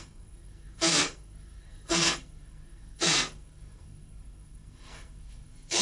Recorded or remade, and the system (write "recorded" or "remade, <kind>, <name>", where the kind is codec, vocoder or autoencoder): remade, codec, SNAC